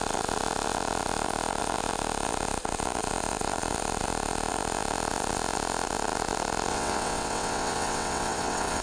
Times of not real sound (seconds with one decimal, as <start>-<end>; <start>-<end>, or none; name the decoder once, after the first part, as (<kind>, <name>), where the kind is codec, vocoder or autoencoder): 6.7-8.8 (vocoder, WaveNeXt)